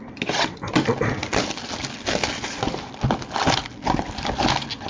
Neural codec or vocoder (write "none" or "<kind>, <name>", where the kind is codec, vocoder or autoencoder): none